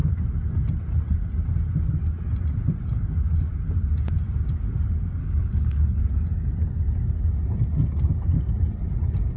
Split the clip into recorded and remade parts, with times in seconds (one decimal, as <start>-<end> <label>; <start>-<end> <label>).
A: 0.0-5.2 recorded; 5.2-6.0 remade; 6.0-9.4 recorded